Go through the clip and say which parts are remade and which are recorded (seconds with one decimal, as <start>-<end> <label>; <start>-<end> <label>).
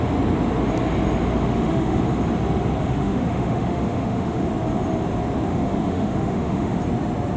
0.0-1.4 recorded; 1.4-2.0 remade; 2.0-2.8 recorded; 2.8-4.5 remade; 4.5-5.5 recorded; 5.5-6.8 remade; 6.8-7.4 recorded